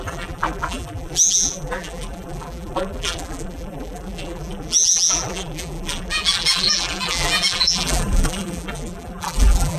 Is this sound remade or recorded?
remade